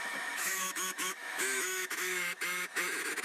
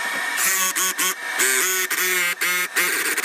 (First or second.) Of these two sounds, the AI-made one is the first